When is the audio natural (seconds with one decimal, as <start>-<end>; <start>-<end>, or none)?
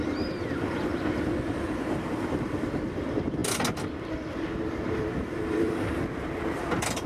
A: 0.9-1.5; 3.4-4.9